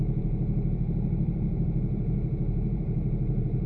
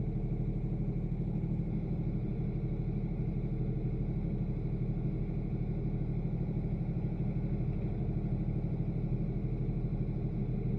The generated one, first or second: first